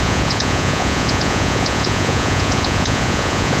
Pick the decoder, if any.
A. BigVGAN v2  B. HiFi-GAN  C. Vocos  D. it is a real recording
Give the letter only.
C